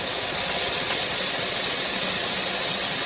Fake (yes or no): yes